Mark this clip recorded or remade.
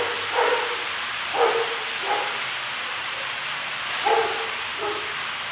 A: recorded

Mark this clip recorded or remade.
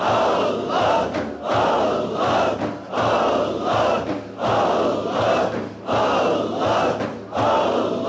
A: recorded